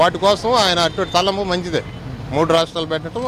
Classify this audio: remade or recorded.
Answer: recorded